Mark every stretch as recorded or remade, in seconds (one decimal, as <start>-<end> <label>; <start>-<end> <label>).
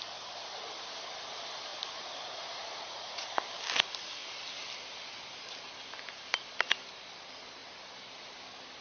0.0-1.7 recorded; 1.7-3.2 remade; 3.2-8.8 recorded